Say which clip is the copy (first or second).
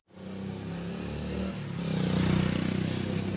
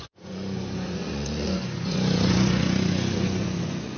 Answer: second